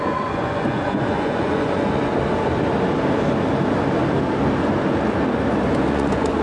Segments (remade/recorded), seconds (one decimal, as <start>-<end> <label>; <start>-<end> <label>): 0.0-2.1 remade; 2.1-5.9 recorded; 5.9-6.4 remade